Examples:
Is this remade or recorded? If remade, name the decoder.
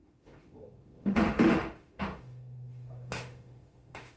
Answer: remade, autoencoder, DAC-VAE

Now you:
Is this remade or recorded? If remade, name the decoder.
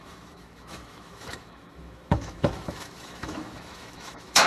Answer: remade, autoencoder, DAC-VAE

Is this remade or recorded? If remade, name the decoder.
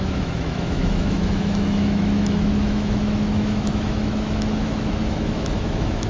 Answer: remade, autoencoder, DAC-VAE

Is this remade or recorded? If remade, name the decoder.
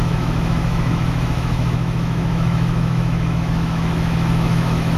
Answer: remade, autoencoder, DAC-VAE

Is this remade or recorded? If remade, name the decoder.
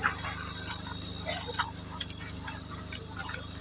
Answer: recorded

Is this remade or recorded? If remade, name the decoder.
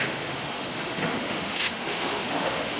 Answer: remade, autoencoder, DAC-VAE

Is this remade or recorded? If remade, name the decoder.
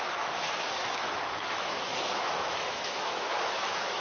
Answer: remade, autoencoder, DAC-VAE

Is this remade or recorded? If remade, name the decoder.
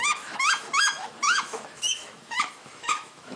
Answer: remade, autoencoder, DAC-VAE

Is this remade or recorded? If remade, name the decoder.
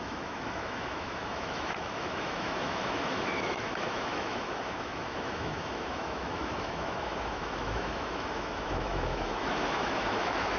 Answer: remade, autoencoder, DAC-VAE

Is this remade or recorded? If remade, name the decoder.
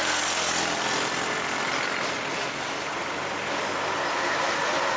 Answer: recorded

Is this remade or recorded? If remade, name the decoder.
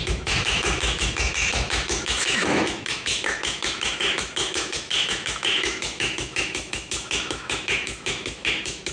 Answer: remade, autoencoder, DAC-VAE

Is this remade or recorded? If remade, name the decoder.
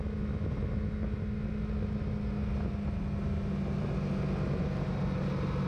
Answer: recorded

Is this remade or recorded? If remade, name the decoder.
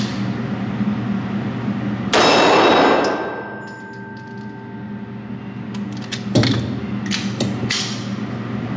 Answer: recorded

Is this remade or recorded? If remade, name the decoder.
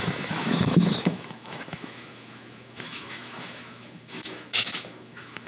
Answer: remade, autoencoder, DAC-VAE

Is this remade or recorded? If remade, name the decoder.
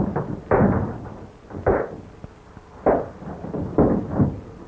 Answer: recorded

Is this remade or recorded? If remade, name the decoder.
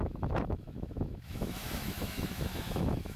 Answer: remade, autoencoder, DAC-VAE